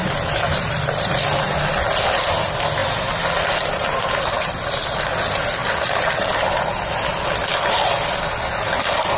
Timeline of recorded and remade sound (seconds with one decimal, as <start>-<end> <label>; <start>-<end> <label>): 0.0-1.1 remade; 1.1-9.2 recorded